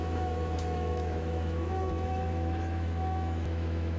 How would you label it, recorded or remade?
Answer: remade